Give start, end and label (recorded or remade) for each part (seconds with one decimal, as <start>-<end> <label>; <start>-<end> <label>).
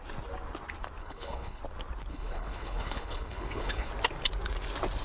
0.0-1.0 recorded; 1.0-1.6 remade; 1.6-2.1 recorded; 2.1-3.9 remade; 3.9-5.0 recorded